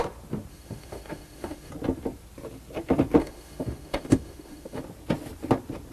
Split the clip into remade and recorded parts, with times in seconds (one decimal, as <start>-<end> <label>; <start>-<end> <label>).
0.0-0.5 recorded; 0.5-1.7 remade; 1.7-3.2 recorded; 3.2-4.8 remade; 4.8-5.9 recorded